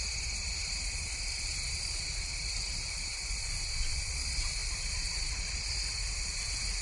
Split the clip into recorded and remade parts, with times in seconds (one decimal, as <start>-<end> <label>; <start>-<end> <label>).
0.0-3.1 recorded; 3.1-4.1 remade; 4.1-6.8 recorded